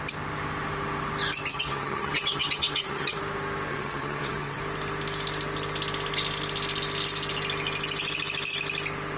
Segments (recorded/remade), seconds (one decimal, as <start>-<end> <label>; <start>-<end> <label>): 0.0-1.5 recorded; 1.5-3.2 remade; 3.2-3.7 recorded; 3.7-4.6 remade; 4.6-9.2 recorded